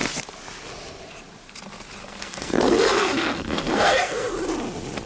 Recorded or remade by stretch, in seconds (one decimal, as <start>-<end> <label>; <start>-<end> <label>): 0.0-2.0 recorded; 2.0-4.3 remade; 4.3-5.1 recorded